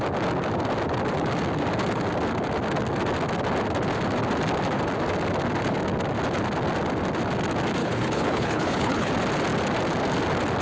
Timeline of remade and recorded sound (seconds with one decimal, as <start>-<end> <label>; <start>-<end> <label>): 0.0-7.8 recorded; 7.8-9.1 remade; 9.1-10.6 recorded